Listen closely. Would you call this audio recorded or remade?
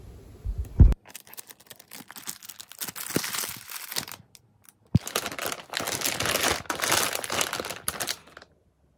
recorded